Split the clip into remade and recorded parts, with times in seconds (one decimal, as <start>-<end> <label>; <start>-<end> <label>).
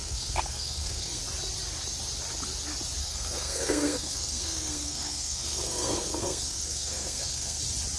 0.0-1.2 remade; 1.2-3.0 recorded; 3.0-7.6 remade; 7.6-8.0 recorded